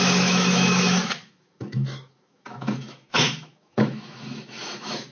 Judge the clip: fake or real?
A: fake